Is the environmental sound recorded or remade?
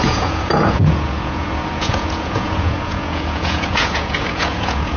remade